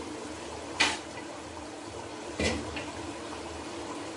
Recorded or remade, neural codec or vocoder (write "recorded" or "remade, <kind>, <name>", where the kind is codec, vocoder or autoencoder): remade, vocoder, BigVGAN v2